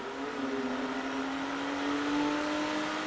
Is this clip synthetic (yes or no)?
no